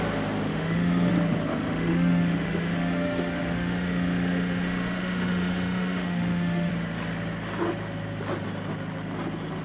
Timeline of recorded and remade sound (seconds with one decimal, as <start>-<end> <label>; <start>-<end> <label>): 0.0-0.5 recorded; 0.5-1.1 remade; 1.1-1.5 recorded; 1.5-6.7 remade; 6.7-9.6 recorded